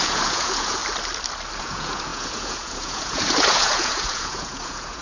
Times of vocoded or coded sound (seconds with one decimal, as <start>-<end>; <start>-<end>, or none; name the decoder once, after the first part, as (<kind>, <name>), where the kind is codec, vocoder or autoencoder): 0.0-0.8 (vocoder, Vocos); 1.6-5.0

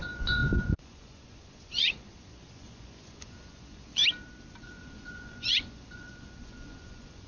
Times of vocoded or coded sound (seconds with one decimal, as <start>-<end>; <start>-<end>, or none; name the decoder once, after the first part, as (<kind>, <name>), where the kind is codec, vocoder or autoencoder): 0.0-4.0 (vocoder, Vocos); 4.6-7.3

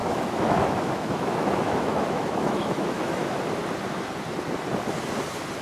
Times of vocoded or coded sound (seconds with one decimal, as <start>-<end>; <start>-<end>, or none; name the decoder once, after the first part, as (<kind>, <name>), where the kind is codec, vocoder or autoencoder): 0.0-3.4 (autoencoder, DAC-VAE)

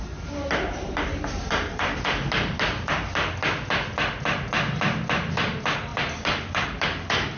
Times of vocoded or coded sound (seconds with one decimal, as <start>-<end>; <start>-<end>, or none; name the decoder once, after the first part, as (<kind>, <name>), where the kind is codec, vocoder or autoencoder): none

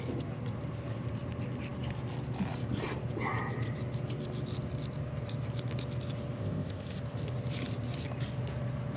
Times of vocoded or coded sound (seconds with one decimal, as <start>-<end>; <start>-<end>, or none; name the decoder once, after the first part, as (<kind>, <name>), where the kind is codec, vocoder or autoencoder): 6.4-7.0 (codec, ZipCodec)

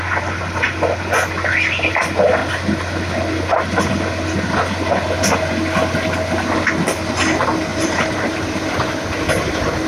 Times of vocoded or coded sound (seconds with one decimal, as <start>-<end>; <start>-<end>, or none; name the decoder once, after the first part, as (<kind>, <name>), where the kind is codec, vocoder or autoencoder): 7.7-8.7 (vocoder, BigVGAN v2)

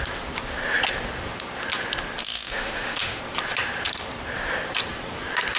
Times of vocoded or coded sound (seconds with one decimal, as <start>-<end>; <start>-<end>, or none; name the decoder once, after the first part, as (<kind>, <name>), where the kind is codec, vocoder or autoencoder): 2.2-3.2 (autoencoder, DAC-VAE)